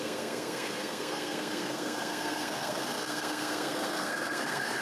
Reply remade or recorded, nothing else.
remade